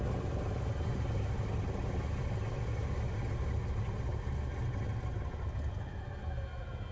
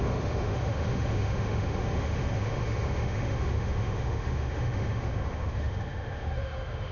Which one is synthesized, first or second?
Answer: second